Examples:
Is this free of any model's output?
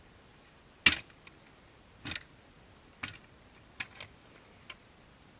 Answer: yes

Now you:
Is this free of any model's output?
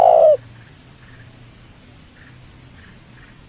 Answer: yes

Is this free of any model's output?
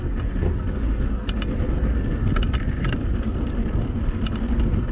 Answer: yes